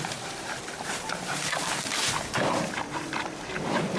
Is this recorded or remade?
remade